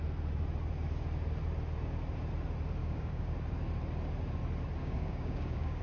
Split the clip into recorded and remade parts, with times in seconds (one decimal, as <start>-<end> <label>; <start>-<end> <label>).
0.0-2.8 recorded; 2.8-3.3 remade; 3.3-4.8 recorded; 4.8-5.8 remade